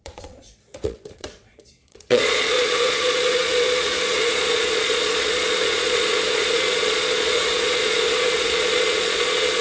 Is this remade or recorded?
remade